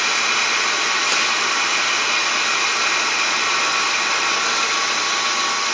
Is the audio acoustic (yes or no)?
yes